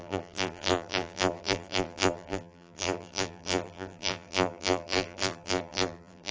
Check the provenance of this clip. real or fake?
fake